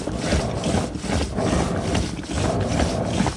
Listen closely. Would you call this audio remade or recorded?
recorded